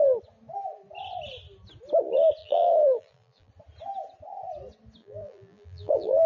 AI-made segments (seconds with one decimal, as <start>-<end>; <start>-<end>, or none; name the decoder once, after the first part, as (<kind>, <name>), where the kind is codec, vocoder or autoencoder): 2.4-3.5 (vocoder, BigVGAN v2); 5.0-6.3